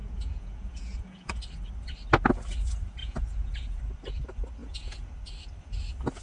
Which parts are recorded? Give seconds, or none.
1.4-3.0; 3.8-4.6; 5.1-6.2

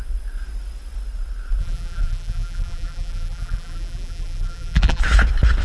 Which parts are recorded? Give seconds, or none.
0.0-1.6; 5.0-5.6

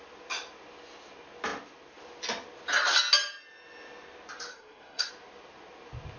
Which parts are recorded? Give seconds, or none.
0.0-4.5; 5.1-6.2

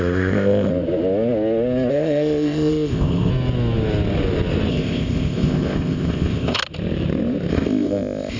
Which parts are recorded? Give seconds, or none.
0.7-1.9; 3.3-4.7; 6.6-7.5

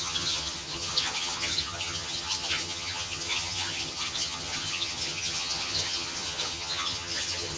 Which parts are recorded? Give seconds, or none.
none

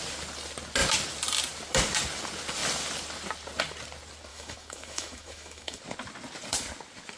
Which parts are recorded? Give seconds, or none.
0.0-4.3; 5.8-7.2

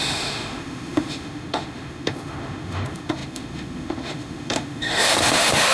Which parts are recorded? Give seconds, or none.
none